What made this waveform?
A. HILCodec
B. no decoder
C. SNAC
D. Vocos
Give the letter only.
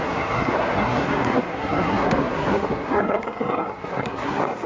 C